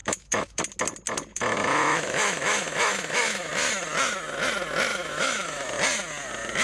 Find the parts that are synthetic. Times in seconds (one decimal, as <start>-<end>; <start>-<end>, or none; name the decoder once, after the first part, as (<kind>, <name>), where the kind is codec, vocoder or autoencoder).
0.0-0.6 (autoencoder, DAC-VAE); 1.3-3.5; 4.9-5.7